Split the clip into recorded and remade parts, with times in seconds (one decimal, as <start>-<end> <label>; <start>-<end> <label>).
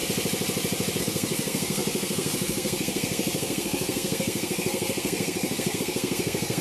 0.0-1.0 recorded; 1.0-6.6 remade